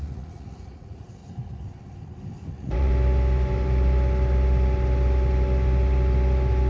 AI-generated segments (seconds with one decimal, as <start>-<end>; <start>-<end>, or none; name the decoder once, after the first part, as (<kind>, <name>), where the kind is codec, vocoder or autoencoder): 0.0-1.2 (vocoder, Vocos); 2.5-2.9